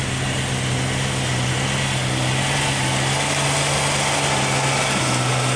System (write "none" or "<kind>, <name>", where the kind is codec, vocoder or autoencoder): none